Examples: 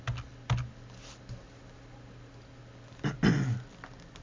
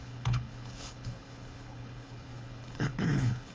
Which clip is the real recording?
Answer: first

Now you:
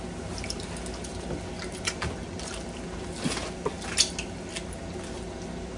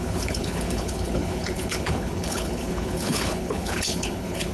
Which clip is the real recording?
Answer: first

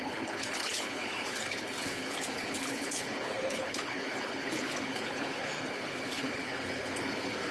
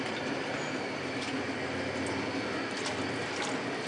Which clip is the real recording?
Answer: second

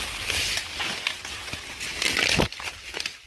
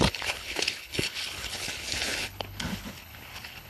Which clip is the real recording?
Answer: first